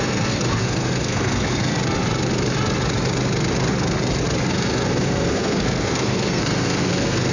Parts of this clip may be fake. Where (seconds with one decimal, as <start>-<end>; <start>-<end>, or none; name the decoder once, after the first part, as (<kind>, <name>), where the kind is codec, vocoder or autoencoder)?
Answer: 0.0-1.7 (codec, SNAC); 4.5-7.3